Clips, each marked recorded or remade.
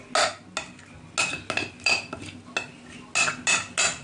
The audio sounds recorded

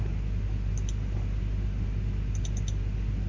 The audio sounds recorded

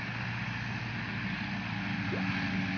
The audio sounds recorded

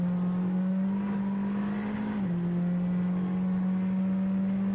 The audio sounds recorded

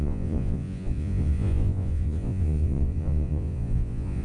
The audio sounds remade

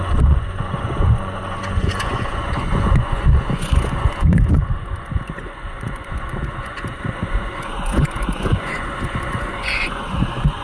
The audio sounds remade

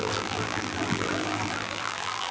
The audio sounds remade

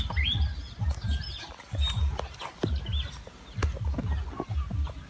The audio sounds recorded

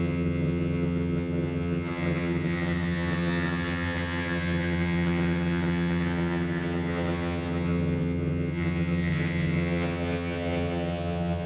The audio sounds remade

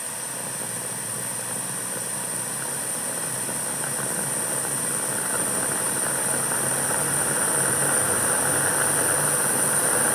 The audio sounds recorded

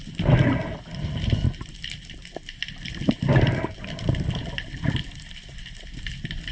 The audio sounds recorded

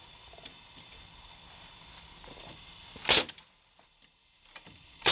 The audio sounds recorded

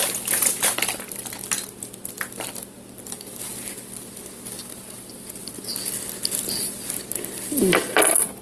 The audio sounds recorded